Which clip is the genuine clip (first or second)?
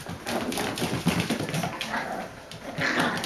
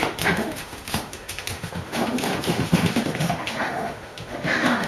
first